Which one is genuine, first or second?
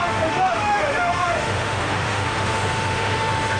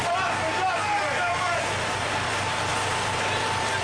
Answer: second